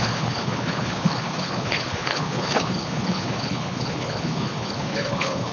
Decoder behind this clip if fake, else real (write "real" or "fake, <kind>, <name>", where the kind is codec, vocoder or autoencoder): fake, codec, HILCodec